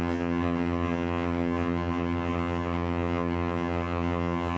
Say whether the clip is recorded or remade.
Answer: remade